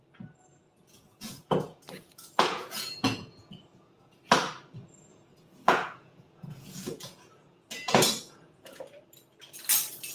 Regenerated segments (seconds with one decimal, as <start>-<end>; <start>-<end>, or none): 0.6-4.2; 5.1-8.8

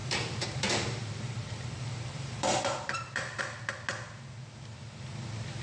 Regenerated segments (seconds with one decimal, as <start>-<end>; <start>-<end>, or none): 0.0-3.4

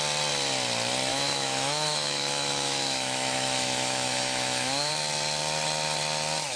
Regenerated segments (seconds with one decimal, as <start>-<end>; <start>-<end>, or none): 1.1-4.9

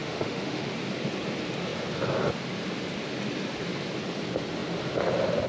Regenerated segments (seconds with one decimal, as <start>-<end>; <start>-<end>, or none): 0.0-0.7

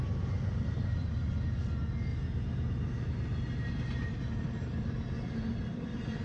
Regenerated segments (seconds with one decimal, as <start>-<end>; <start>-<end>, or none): 0.5-1.2; 2.1-4.2